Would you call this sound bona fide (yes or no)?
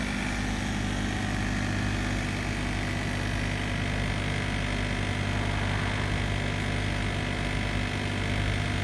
yes